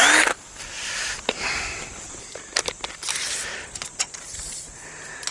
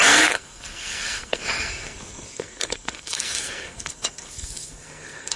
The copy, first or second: second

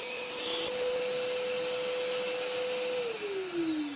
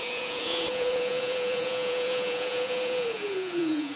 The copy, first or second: second